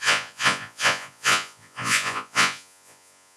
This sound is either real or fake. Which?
fake